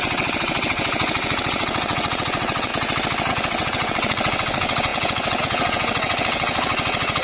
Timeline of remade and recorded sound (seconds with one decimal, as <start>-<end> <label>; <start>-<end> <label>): 0.0-2.7 remade; 2.7-3.3 recorded; 3.3-7.2 remade